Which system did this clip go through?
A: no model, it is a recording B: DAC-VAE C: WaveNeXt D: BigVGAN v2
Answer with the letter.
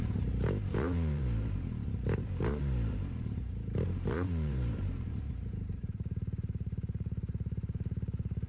D